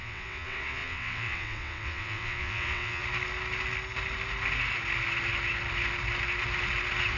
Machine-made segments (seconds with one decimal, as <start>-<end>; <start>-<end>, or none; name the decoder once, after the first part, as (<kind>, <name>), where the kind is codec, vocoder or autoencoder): 0.0-3.0 (vocoder, WaveNeXt)